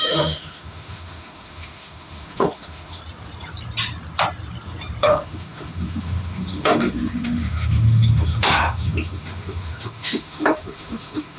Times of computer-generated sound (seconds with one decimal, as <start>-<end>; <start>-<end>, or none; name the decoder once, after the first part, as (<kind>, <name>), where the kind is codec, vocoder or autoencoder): 0.0-3.0 (autoencoder, DAC-VAE); 5.0-11.4